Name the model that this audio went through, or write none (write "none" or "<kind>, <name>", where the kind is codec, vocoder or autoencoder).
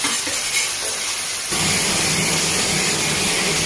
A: none